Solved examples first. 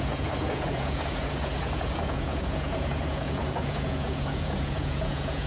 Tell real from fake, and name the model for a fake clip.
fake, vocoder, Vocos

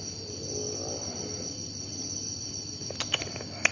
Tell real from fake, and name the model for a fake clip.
real